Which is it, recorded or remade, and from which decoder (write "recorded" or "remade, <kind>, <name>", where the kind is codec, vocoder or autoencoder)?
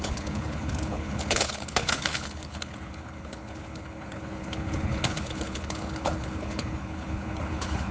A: remade, codec, HILCodec